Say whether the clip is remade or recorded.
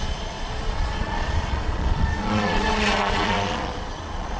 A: remade